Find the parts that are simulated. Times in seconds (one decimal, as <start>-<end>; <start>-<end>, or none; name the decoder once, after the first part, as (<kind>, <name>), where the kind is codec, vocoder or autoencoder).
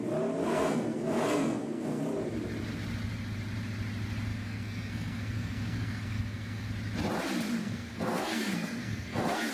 0.4-2.0 (codec, SNAC); 4.3-6.7; 7.6-9.5